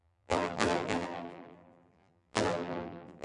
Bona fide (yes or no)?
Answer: no